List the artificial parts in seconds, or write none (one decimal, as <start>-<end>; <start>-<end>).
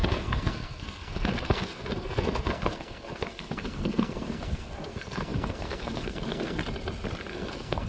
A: 0.0-6.6; 7.3-7.9